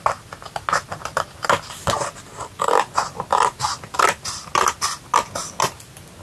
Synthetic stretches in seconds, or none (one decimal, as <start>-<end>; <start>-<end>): none